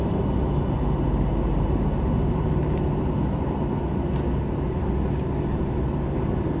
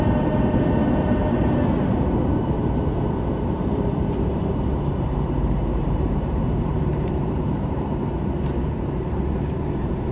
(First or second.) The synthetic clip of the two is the second